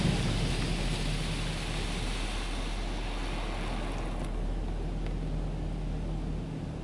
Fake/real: real